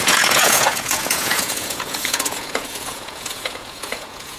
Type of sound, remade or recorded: remade